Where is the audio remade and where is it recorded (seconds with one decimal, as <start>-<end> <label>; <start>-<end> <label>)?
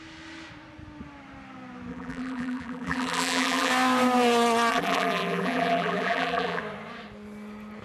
0.0-1.9 recorded; 1.9-3.7 remade; 3.7-4.7 recorded; 4.7-6.6 remade; 6.6-7.8 recorded